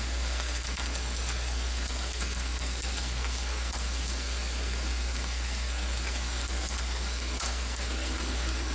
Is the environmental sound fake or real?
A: fake